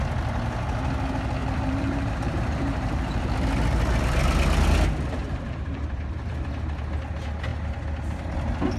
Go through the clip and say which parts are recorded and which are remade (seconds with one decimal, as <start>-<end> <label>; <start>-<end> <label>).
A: 0.0-1.4 recorded; 1.4-3.3 remade; 3.3-5.2 recorded; 5.2-6.3 remade; 6.3-8.8 recorded